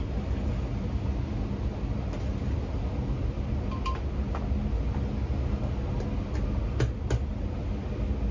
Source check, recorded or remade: recorded